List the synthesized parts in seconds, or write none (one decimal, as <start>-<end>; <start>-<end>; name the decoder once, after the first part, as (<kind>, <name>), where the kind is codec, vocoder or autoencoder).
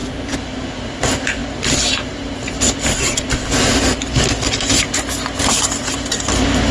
none